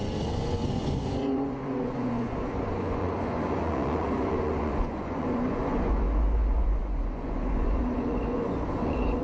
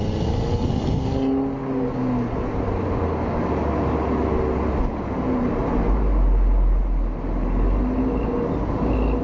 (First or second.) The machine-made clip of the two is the first